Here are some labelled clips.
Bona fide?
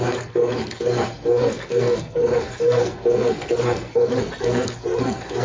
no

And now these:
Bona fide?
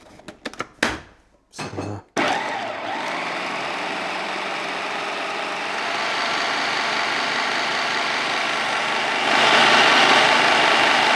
yes